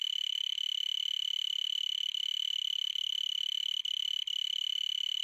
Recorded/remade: recorded